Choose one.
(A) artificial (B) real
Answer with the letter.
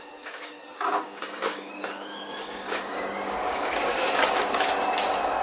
A